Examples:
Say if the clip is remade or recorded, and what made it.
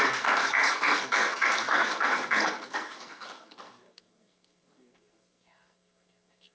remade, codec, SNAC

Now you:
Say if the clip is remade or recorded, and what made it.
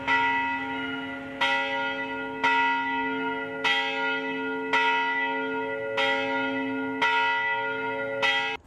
recorded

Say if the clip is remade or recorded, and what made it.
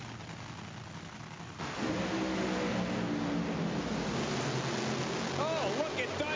recorded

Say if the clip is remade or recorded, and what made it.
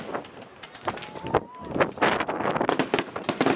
recorded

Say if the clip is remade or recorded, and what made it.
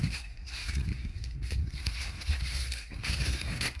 remade, codec, SNAC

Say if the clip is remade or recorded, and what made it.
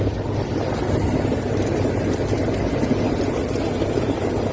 recorded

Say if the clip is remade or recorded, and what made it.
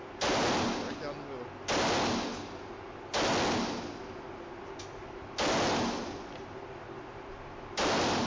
recorded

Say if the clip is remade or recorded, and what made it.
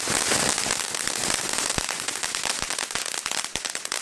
recorded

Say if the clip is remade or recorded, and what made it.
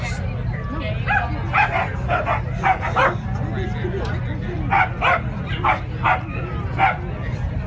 recorded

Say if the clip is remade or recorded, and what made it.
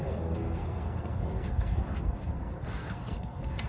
remade, codec, SNAC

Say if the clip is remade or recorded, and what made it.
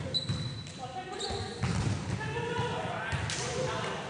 recorded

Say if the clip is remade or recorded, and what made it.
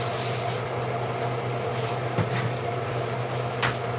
recorded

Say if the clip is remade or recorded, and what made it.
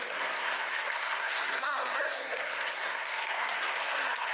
remade, codec, SNAC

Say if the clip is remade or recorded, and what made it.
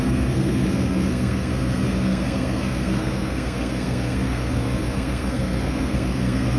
remade, codec, SNAC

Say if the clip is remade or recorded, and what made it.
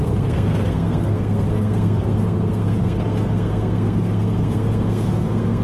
remade, codec, SNAC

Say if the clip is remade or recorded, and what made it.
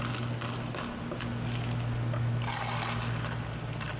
recorded